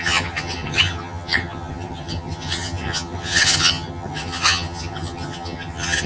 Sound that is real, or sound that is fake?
fake